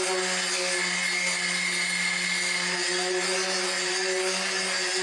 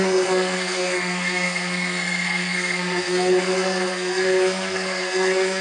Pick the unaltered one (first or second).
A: first